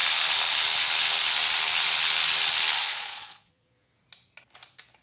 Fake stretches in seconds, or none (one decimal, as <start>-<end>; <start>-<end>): 2.8-4.0